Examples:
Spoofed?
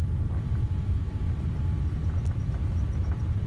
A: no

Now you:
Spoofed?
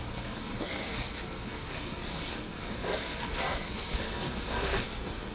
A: yes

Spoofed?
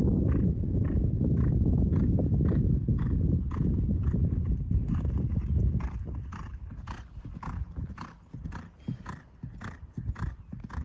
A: no